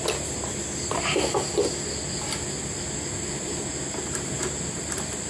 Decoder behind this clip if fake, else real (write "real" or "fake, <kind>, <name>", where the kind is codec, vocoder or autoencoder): real